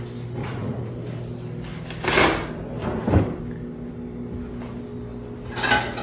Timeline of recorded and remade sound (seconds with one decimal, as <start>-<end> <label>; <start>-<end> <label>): 0.0-0.4 recorded; 0.4-0.9 remade; 0.9-6.0 recorded